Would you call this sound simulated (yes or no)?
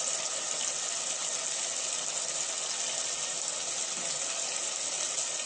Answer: no